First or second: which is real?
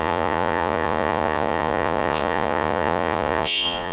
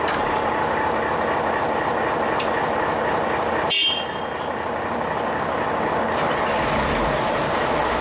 second